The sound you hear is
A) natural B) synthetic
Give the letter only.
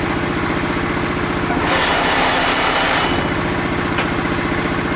A